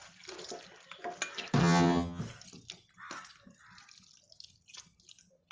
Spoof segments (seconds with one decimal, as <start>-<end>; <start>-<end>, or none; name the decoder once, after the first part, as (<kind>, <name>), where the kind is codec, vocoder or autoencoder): 1.6-2.2 (vocoder, HiFi-GAN)